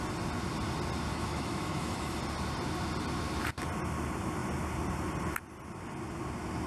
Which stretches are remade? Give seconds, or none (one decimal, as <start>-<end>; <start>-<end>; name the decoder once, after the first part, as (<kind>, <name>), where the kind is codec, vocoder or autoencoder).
1.1-2.2 (autoencoder, DAC-VAE)